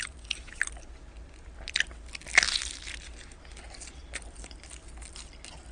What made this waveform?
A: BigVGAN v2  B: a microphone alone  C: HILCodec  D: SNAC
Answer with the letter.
B